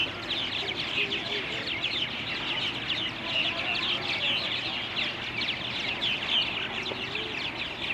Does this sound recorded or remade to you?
recorded